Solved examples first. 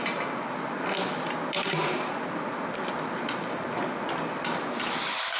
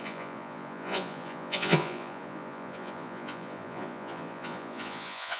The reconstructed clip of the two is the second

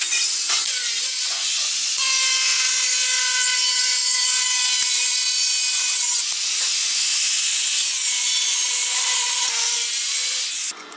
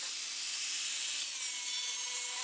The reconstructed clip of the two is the first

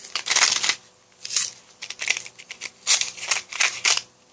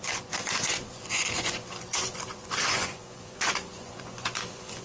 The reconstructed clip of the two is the second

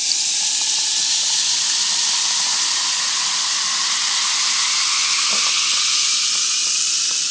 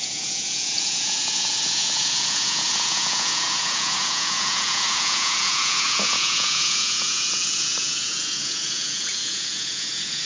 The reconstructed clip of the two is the second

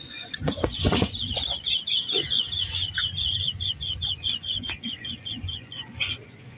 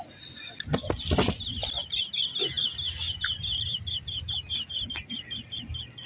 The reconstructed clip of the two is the first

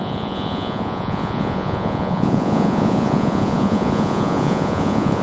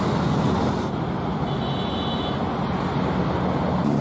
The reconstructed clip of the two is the first